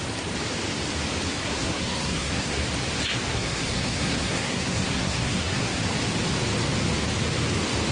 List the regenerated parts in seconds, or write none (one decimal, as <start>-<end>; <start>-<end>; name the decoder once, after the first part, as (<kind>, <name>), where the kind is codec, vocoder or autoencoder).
1.4-2.6 (codec, SNAC); 3.3-5.8